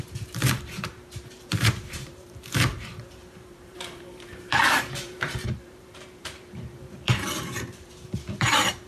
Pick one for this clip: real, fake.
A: fake